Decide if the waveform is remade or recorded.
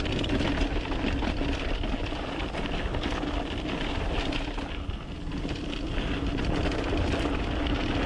recorded